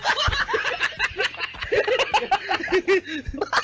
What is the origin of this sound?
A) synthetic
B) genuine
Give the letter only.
B